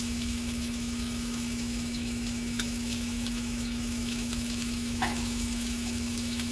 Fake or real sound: fake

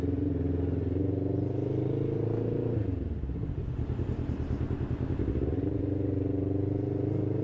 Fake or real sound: real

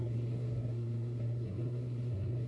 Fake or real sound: fake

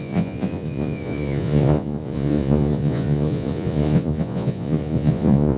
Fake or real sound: fake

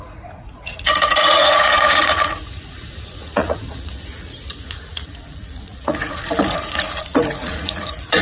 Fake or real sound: fake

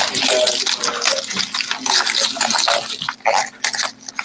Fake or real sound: real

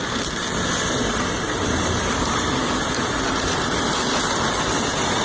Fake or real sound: real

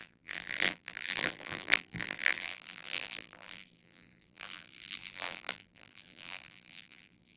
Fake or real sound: fake